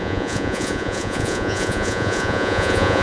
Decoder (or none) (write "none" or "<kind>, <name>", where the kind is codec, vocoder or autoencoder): vocoder, Vocos